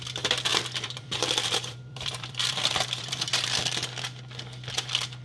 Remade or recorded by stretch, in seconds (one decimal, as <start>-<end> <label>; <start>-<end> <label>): 0.0-0.5 recorded; 0.5-3.6 remade; 3.6-5.2 recorded